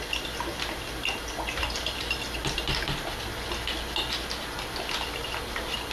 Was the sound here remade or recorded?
recorded